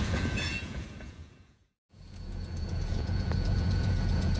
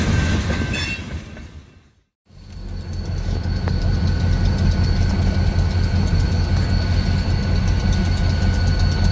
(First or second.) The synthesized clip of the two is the first